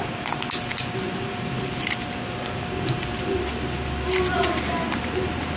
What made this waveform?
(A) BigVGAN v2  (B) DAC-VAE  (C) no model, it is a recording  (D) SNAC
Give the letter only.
C